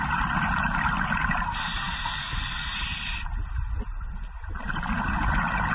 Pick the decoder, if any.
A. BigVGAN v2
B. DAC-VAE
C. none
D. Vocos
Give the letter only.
C